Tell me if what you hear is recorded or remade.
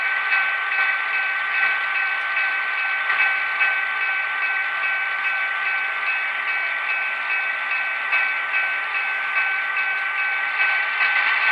recorded